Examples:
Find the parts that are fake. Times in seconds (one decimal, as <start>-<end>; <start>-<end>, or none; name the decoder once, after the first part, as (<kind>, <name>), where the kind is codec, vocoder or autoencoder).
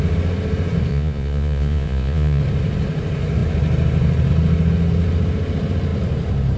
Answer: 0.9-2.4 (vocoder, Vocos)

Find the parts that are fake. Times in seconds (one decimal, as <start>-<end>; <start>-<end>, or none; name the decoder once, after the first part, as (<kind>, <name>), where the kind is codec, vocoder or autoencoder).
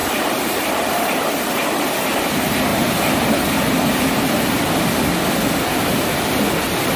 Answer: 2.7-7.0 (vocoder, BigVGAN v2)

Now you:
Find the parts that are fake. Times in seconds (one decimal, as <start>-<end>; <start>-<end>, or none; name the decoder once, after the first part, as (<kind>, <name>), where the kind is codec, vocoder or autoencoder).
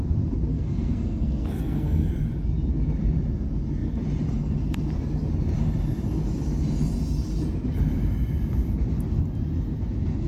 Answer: 0.5-2.1 (codec, SNAC)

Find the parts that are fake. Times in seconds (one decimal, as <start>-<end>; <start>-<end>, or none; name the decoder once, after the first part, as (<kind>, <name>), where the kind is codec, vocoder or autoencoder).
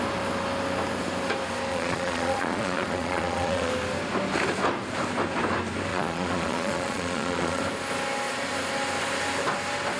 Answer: 1.7-3.7 (vocoder, Vocos); 5.9-7.6